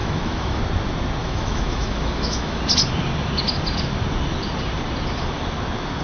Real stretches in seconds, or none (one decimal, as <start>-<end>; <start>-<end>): 0.6-1.2; 2.6-6.0